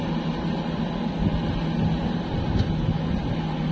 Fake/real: real